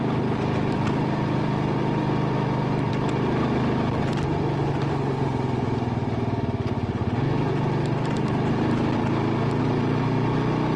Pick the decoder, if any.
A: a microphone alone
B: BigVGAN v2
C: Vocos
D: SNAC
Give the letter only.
A